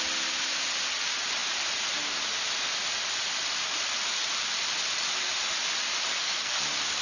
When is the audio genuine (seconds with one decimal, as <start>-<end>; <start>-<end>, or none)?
0.0-6.1; 6.6-7.0